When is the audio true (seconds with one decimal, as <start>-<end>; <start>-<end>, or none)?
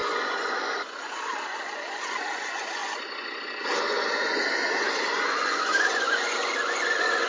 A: none